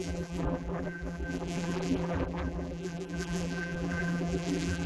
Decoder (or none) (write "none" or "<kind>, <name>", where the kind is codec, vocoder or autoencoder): vocoder, BigVGAN v2